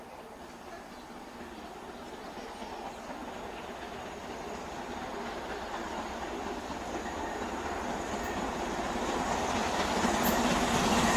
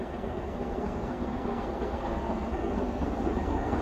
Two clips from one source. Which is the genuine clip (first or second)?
first